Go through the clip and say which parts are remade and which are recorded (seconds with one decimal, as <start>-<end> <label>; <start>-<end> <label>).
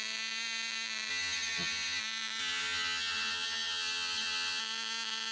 0.0-1.1 recorded; 1.1-2.0 remade; 2.0-2.4 recorded; 2.4-4.6 remade; 4.6-5.3 recorded